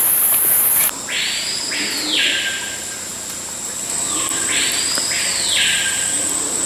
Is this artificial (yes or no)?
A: no